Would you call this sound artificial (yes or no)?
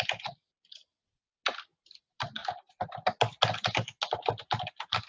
no